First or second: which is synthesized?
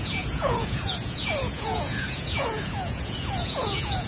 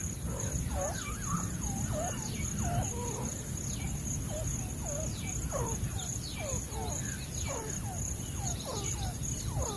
first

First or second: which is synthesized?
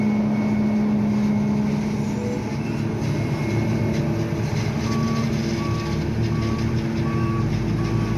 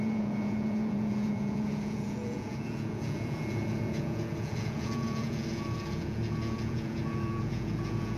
second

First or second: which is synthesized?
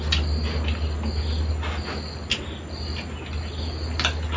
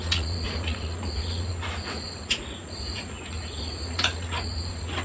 second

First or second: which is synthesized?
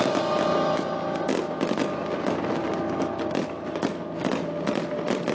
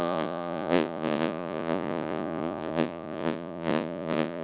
second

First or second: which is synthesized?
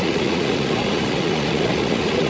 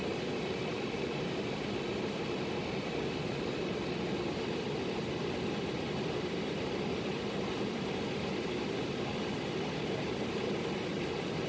first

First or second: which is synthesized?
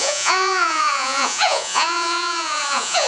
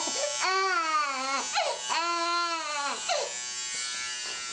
first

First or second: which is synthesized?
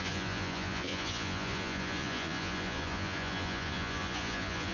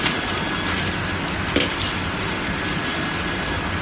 first